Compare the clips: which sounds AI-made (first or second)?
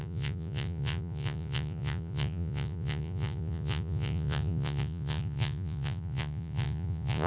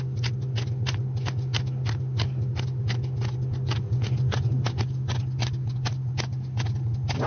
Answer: first